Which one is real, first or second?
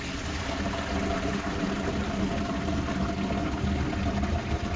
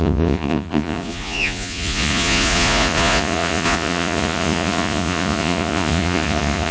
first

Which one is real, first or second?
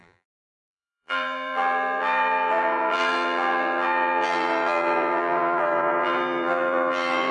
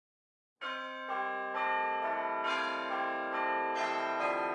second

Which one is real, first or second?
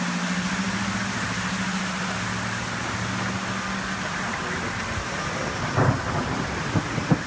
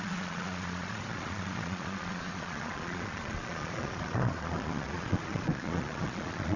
first